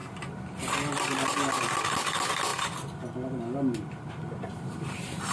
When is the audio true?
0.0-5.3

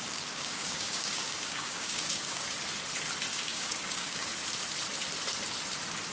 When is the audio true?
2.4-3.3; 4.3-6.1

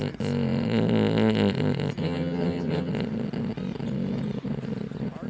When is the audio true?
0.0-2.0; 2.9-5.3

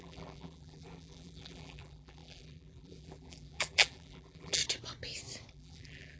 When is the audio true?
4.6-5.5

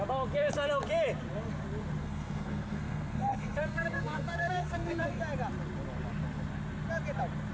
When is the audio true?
0.0-2.0; 5.2-7.5

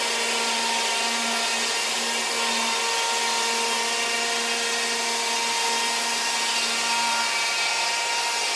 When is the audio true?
0.0-8.6

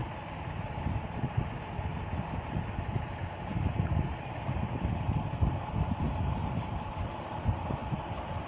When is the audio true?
0.0-8.5